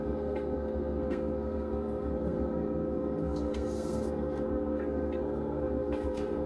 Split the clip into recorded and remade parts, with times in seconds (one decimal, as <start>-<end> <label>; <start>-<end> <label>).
0.0-6.5 remade